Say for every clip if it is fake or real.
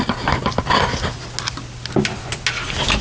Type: real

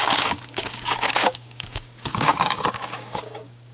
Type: fake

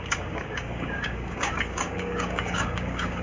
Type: fake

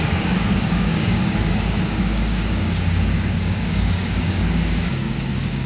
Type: fake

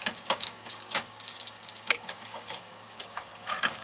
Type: fake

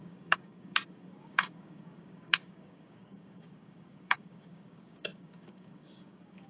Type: fake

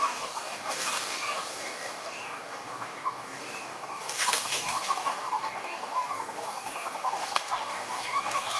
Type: fake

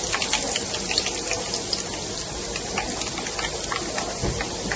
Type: real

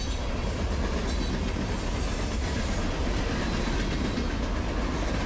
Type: real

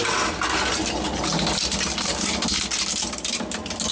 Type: real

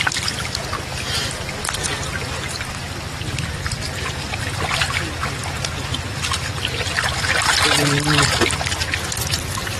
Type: real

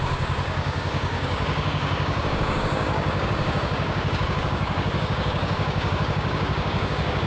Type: fake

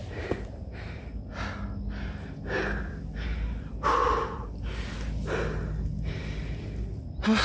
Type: real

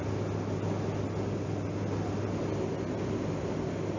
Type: real